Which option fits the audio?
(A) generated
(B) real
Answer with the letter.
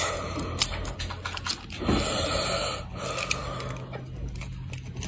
B